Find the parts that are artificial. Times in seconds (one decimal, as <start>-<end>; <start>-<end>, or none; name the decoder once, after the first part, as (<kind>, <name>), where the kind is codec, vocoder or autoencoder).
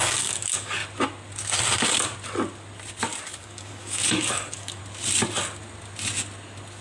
0.0-0.8 (codec, DAC); 3.2-4.8